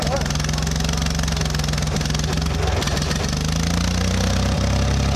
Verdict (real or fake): real